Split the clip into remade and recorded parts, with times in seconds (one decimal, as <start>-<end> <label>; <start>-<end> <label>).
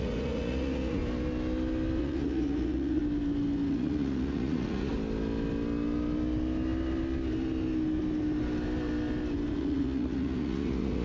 0.0-1.0 remade; 1.0-2.0 recorded; 2.0-3.0 remade; 3.0-3.7 recorded; 3.7-4.9 remade; 4.9-9.6 recorded; 9.6-11.0 remade